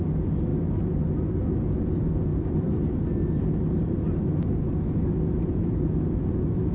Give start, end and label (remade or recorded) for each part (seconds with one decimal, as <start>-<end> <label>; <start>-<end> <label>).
0.0-6.7 recorded